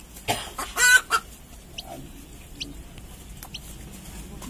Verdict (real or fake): real